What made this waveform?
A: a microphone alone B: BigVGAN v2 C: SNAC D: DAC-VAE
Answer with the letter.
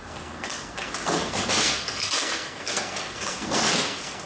C